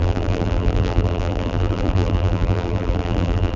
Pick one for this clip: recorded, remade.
remade